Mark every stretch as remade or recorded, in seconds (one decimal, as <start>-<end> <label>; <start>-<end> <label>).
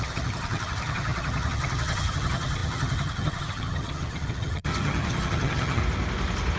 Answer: 0.0-5.8 remade; 5.8-6.6 recorded